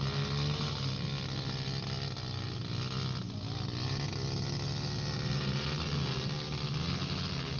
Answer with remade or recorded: recorded